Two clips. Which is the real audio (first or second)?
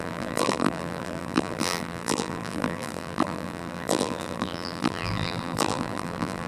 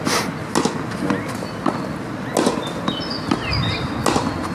second